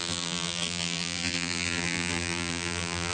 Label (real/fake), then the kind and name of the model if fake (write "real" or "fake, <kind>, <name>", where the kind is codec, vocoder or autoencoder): fake, vocoder, BigVGAN v2